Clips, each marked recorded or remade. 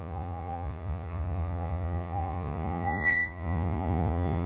remade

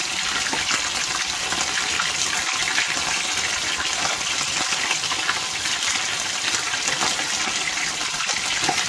recorded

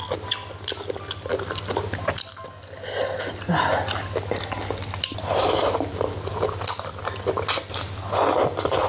recorded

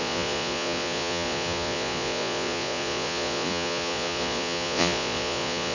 remade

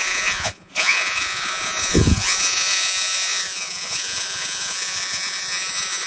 remade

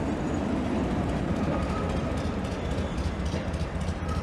recorded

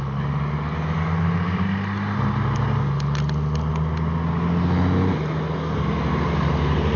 recorded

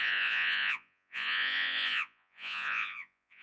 remade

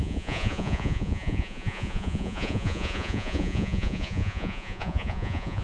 remade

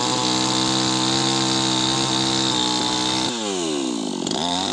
recorded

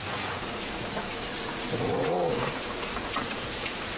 remade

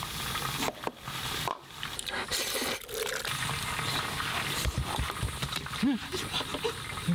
recorded